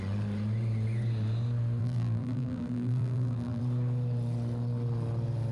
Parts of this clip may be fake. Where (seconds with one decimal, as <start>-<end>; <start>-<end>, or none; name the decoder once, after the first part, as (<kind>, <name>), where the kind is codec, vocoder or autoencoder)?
1.8-3.6 (vocoder, BigVGAN v2)